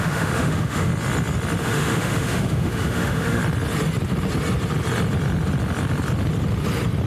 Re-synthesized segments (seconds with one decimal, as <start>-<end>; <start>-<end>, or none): 0.0-0.9; 1.6-3.4